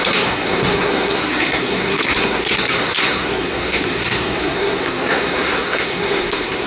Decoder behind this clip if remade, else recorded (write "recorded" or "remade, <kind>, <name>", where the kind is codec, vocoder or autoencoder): remade, codec, SNAC